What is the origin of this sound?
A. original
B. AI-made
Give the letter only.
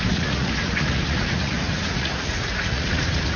B